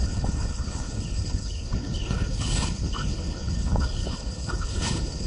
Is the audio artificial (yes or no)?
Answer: yes